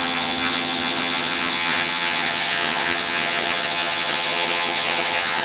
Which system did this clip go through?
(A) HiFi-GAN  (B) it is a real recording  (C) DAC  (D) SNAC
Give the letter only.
A